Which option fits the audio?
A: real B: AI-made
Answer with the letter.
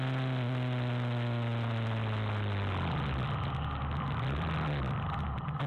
A